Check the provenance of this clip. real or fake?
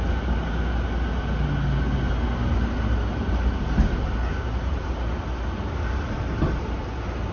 real